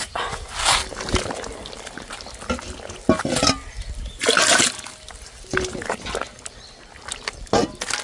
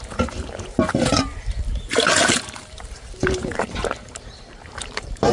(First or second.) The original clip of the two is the first